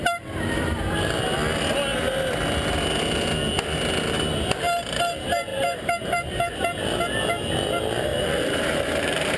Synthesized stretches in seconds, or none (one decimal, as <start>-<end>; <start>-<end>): 5.5-6.6; 8.1-9.4